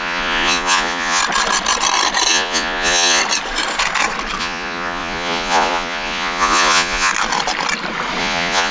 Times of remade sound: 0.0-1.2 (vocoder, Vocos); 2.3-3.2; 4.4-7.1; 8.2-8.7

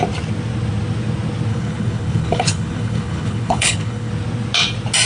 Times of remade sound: 1.5-4.1 (codec, HILCodec)